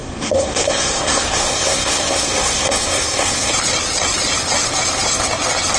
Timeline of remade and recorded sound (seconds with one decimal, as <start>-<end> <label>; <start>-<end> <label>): 0.0-3.5 remade; 3.5-5.8 recorded